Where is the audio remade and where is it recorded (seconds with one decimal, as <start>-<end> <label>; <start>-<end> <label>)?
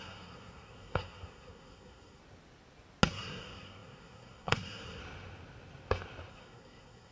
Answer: 0.0-2.2 remade; 2.2-3.1 recorded; 3.1-5.0 remade; 5.0-6.3 recorded; 6.3-7.1 remade